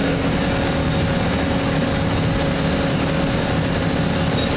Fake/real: real